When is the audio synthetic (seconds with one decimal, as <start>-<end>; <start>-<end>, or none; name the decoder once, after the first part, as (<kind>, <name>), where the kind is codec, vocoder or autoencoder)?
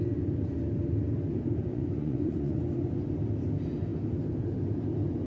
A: 1.7-2.6 (vocoder, Vocos)